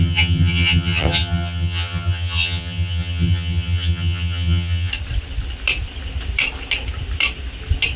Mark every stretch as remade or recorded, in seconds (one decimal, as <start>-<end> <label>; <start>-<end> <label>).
0.0-4.9 remade; 4.9-8.0 recorded